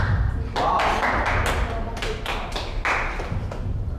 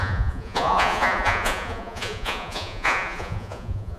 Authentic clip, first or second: first